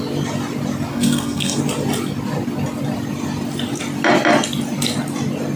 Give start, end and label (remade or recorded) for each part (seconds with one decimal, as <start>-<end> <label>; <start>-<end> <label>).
0.0-0.9 recorded; 0.9-1.6 remade; 1.6-5.6 recorded